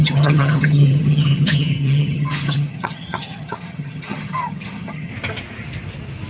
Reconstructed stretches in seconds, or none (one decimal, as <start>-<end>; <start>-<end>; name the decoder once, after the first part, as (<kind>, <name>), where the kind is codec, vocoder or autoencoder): 0.0-5.1 (vocoder, HiFi-GAN)